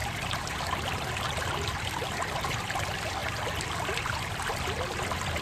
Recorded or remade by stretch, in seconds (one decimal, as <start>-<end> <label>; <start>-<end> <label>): 0.0-0.8 remade; 0.8-5.4 recorded